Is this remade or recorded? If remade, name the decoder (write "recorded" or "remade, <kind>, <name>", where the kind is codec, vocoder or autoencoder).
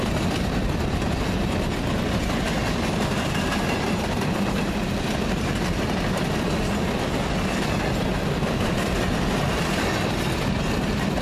recorded